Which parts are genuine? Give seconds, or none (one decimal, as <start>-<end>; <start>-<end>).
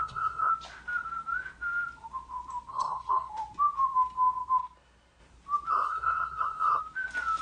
0.5-2.7; 3.3-5.7; 6.8-7.4